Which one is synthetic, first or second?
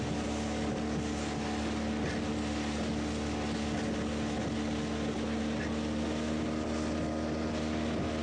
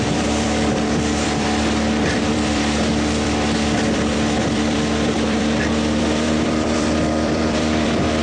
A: second